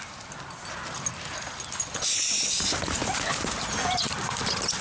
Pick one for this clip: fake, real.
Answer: real